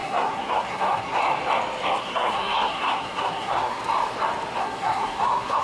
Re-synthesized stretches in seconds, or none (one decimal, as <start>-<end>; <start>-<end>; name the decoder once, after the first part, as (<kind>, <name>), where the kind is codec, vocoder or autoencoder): 0.0-1.2 (codec, SNAC); 2.0-3.8; 4.6-5.6